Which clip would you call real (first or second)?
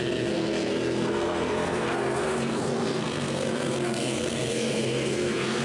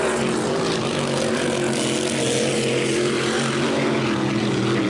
second